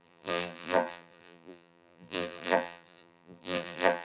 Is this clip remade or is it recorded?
remade